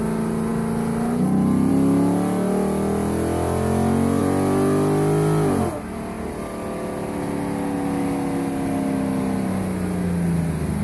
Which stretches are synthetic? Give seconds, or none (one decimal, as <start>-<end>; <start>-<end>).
none